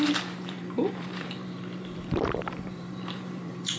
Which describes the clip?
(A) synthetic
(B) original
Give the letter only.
A